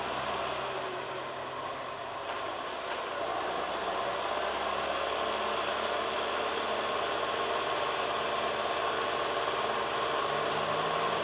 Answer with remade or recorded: recorded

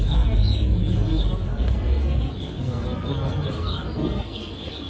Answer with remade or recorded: remade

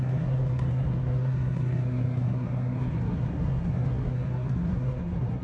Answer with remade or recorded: remade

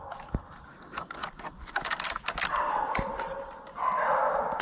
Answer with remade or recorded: recorded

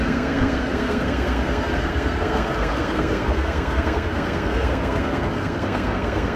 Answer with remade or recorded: remade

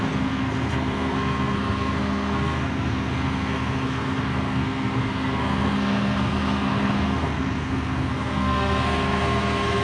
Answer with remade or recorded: remade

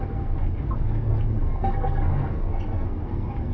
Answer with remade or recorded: remade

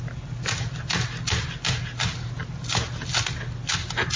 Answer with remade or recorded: recorded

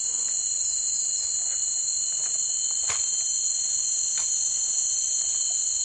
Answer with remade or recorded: recorded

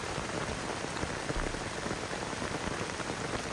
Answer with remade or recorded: recorded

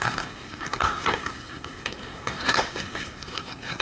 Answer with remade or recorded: remade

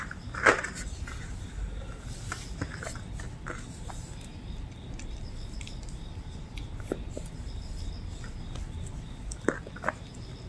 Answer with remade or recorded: recorded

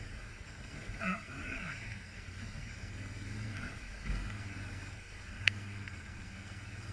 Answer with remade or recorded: remade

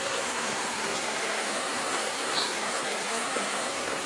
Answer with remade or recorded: remade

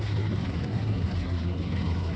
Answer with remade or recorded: remade